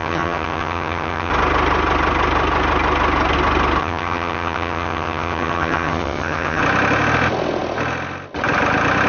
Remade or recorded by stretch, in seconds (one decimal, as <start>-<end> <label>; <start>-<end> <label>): 0.0-1.3 remade; 1.3-3.8 recorded; 3.8-6.6 remade; 6.6-9.1 recorded